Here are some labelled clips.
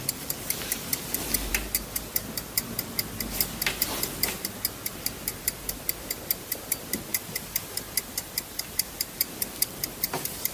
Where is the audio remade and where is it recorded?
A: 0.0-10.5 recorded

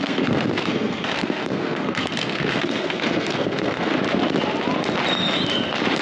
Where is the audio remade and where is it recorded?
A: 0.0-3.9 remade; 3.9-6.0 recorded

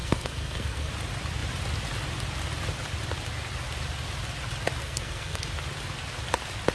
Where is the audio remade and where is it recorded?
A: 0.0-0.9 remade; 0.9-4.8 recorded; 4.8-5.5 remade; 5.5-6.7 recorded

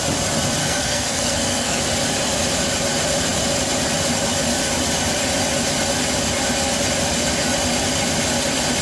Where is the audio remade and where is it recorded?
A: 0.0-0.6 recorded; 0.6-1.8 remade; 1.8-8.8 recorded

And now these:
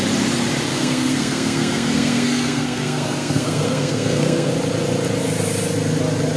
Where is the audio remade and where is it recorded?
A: 0.0-0.7 recorded; 0.7-4.5 remade; 4.5-6.4 recorded

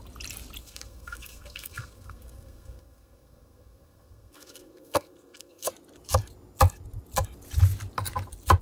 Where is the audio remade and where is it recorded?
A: 0.0-0.6 recorded; 0.6-5.7 remade; 5.7-8.6 recorded

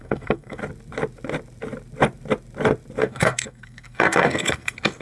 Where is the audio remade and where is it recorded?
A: 0.0-0.6 remade; 0.6-3.0 recorded; 3.0-5.0 remade

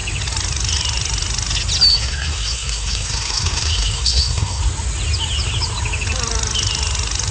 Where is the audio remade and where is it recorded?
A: 0.0-1.9 recorded; 1.9-4.6 remade; 4.6-7.3 recorded